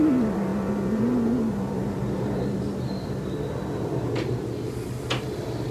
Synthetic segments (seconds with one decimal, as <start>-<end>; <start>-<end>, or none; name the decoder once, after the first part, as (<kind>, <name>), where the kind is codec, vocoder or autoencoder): none